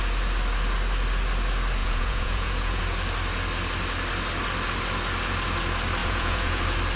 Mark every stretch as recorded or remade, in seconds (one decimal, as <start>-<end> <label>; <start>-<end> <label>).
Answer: 0.0-1.8 recorded; 1.8-2.8 remade; 2.8-6.0 recorded; 6.0-6.6 remade; 6.6-7.0 recorded